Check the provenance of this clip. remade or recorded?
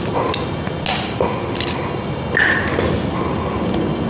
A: recorded